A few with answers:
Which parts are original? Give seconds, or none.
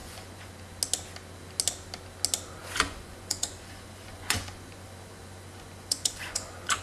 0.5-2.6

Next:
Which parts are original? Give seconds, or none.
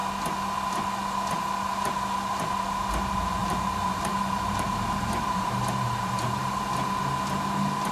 0.0-3.4; 7.0-7.9